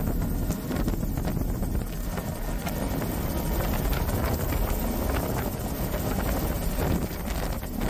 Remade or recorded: recorded